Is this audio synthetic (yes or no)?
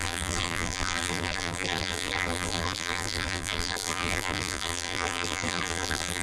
yes